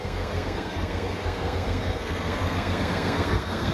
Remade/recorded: remade